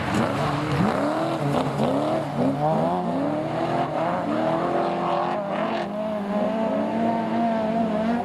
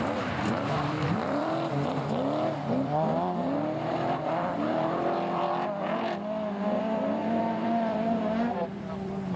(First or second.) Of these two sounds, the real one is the first